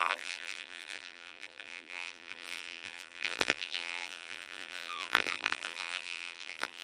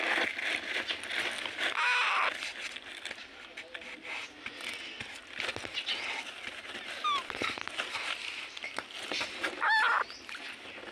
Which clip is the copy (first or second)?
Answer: first